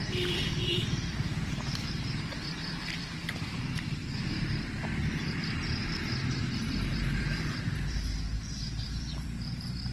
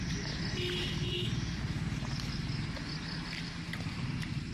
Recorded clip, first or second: second